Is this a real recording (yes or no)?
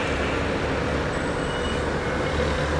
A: yes